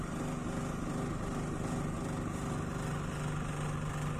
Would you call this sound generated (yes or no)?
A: no